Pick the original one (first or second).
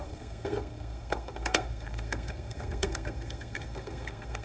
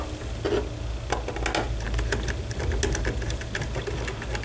second